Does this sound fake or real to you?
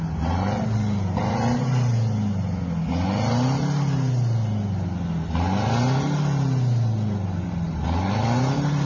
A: real